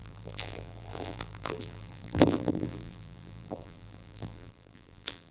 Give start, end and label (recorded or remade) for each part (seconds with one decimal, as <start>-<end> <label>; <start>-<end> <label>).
0.0-5.3 remade